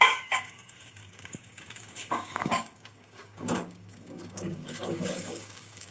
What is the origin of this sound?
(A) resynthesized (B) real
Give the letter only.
A